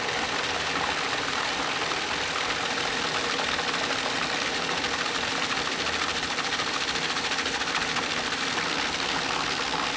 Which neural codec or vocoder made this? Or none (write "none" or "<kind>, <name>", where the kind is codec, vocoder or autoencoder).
none